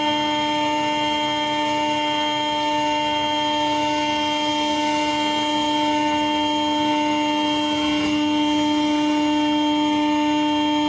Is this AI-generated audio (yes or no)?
no